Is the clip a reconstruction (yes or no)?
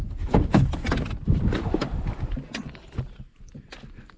yes